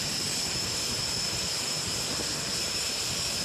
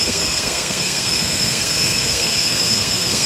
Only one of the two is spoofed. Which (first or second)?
second